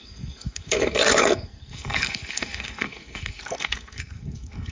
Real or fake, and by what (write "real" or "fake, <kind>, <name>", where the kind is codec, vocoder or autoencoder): fake, codec, SNAC